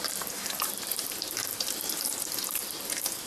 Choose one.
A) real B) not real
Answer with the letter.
B